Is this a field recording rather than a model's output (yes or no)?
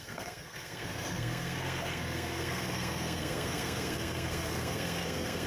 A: no